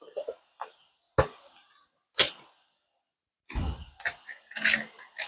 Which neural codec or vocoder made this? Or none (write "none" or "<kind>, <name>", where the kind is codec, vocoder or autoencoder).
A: none